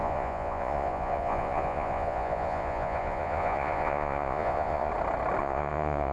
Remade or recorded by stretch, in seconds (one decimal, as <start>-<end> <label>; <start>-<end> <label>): 0.0-4.9 remade; 4.9-5.4 recorded; 5.4-6.1 remade